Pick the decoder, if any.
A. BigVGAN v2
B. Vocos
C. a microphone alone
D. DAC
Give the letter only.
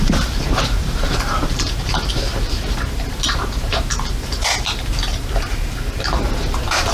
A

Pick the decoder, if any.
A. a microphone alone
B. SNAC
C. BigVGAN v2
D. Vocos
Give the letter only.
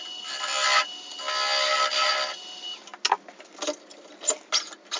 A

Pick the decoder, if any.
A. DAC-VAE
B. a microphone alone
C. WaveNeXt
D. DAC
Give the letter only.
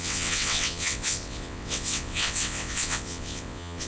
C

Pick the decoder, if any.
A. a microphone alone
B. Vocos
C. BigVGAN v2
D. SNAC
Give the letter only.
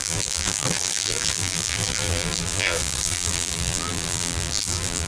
C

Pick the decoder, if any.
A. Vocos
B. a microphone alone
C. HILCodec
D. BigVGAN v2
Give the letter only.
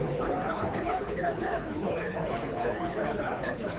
C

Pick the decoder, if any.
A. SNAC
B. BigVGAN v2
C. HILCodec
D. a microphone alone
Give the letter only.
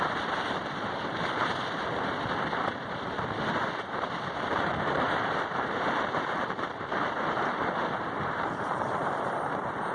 B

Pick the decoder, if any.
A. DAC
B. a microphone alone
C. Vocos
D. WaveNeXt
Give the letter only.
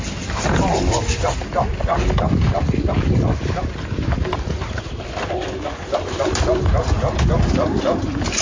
B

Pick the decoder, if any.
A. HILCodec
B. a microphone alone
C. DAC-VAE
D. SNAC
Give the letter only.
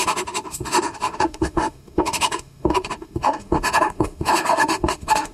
C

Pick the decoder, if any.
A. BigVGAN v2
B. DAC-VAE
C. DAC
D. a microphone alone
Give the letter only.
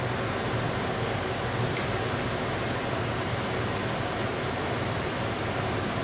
D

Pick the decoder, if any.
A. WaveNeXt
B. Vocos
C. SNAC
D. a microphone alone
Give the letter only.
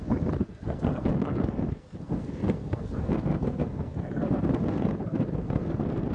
C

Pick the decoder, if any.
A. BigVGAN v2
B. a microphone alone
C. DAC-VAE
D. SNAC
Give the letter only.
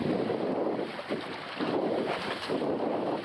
B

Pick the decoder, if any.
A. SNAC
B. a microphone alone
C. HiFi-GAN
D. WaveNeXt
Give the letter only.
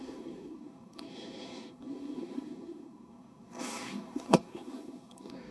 A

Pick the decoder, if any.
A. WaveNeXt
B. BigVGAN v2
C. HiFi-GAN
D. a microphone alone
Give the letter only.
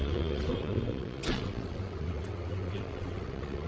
A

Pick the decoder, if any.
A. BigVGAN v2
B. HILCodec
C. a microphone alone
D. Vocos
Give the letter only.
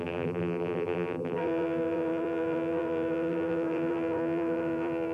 A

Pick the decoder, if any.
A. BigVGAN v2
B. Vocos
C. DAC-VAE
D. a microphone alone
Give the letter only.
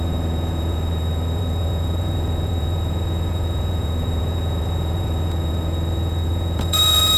B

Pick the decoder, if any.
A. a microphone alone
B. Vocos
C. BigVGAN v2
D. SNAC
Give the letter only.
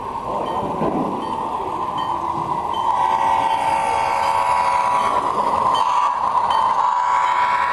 A